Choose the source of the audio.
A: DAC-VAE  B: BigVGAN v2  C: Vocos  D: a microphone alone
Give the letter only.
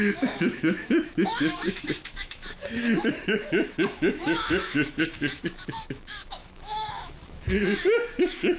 A